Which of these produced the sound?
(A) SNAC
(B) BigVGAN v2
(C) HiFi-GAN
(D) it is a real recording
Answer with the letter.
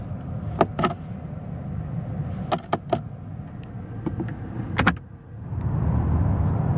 D